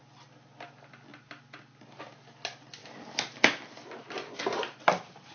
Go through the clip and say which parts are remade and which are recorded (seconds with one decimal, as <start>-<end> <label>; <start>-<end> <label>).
0.0-5.3 recorded